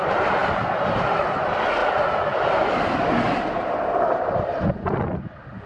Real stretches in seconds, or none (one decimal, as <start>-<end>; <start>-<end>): 0.0-5.7